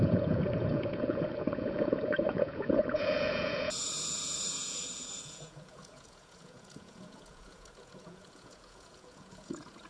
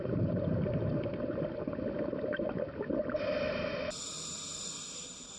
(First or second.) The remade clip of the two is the first